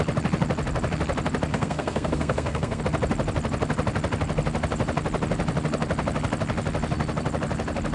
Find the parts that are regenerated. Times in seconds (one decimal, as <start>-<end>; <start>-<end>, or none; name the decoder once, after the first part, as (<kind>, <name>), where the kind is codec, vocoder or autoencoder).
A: 1.5-2.8 (codec, SNAC)